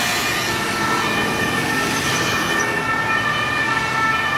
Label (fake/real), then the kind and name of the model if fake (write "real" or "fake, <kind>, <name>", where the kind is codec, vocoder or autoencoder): real